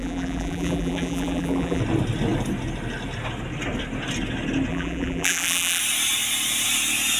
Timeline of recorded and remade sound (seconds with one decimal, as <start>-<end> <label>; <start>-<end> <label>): 0.0-1.8 remade; 1.8-4.7 recorded; 4.7-5.8 remade; 5.8-7.2 recorded